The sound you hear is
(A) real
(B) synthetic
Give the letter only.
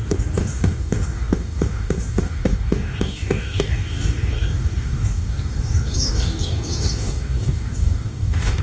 B